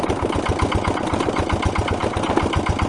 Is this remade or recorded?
recorded